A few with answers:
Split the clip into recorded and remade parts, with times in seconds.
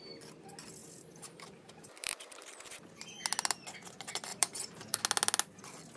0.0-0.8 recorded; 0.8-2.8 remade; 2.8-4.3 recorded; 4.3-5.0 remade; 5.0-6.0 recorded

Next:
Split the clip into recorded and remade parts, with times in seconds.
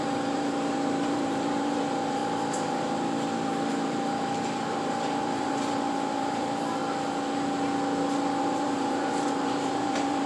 0.0-6.8 remade; 6.8-8.4 recorded; 8.4-10.3 remade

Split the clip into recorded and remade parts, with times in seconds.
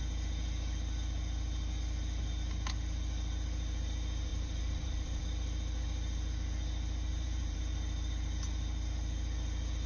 0.0-4.3 recorded; 4.3-5.2 remade; 5.2-7.1 recorded; 7.1-7.6 remade; 7.6-9.9 recorded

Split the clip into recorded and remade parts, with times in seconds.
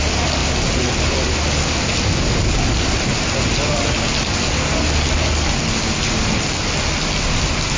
0.0-7.8 recorded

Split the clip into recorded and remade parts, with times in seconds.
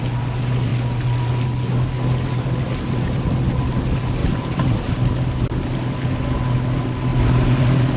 0.0-4.2 recorded; 4.2-5.1 remade; 5.1-7.1 recorded; 7.1-7.6 remade; 7.6-8.0 recorded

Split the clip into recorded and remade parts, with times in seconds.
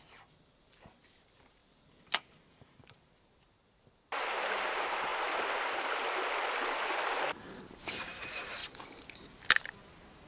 0.0-1.6 remade; 1.6-2.4 recorded; 2.4-5.1 remade; 5.1-7.6 recorded; 7.6-8.6 remade; 8.6-9.9 recorded; 9.9-10.3 remade